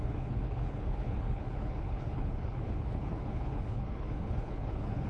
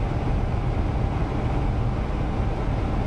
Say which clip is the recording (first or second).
second